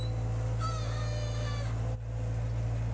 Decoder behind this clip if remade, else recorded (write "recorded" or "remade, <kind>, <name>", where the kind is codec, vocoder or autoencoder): recorded